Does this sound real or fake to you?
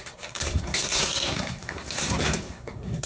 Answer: fake